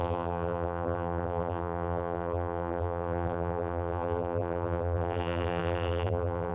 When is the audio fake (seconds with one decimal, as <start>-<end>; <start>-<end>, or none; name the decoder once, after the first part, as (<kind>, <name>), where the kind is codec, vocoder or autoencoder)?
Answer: 0.0-6.5 (vocoder, BigVGAN v2)